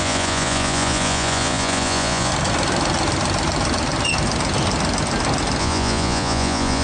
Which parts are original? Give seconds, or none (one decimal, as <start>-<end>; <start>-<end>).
2.3-5.6